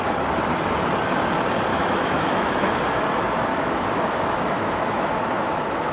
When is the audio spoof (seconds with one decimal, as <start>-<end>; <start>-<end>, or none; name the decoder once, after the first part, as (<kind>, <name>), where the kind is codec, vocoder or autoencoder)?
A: 1.7-2.8 (autoencoder, DAC-VAE); 3.5-5.9